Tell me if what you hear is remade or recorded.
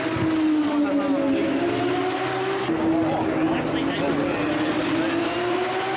recorded